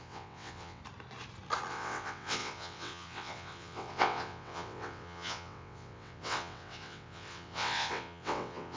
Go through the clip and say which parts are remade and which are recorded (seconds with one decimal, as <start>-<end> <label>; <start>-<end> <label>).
0.0-0.8 remade; 0.8-1.7 recorded; 1.7-8.8 remade